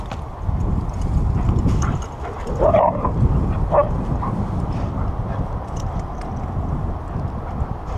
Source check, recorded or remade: recorded